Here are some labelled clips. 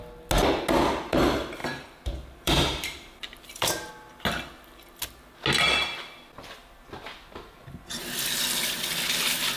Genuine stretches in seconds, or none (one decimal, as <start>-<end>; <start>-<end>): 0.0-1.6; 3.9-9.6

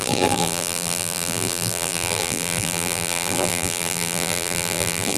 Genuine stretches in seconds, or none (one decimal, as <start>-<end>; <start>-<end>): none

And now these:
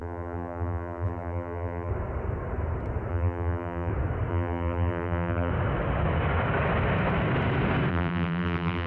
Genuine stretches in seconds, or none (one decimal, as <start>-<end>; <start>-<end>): 1.9-3.1; 3.9-4.3; 5.5-7.9

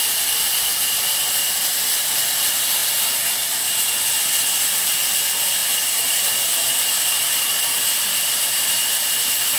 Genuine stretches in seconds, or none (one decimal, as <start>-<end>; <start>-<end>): 2.8-3.5

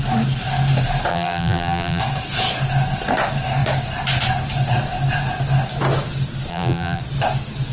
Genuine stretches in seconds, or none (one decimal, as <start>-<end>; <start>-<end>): 0.0-1.1; 2.0-6.5; 7.0-7.7